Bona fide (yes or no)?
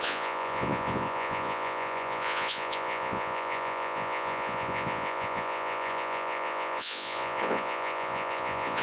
no